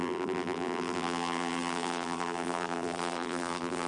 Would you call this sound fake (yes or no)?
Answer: yes